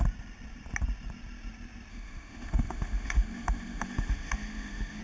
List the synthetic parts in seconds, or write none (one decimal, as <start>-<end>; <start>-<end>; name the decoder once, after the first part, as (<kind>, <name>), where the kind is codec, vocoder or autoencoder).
1.9-5.0 (autoencoder, DAC-VAE)